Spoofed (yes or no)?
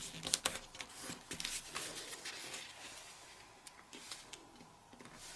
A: no